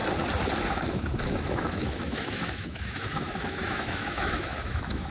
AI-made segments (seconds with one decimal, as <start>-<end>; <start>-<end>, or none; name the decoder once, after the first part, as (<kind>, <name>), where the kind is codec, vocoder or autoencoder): 0.7-5.1 (autoencoder, DAC-VAE)